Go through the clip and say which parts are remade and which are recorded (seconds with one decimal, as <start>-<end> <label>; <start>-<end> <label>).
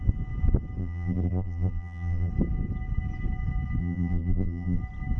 0.0-0.8 recorded; 0.8-2.3 remade; 2.3-3.8 recorded; 3.8-4.8 remade; 4.8-5.2 recorded